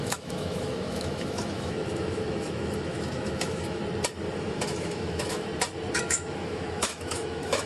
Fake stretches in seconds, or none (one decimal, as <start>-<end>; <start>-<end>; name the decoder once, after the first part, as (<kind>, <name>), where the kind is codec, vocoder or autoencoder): 0.0-3.8 (autoencoder, DAC-VAE); 4.4-5.5; 6.0-7.7